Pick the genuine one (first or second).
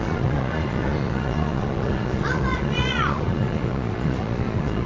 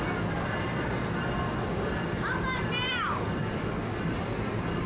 second